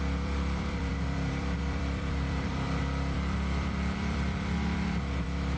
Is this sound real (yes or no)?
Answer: no